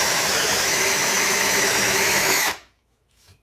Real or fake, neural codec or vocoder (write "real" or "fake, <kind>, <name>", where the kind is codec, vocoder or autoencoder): fake, autoencoder, DAC-VAE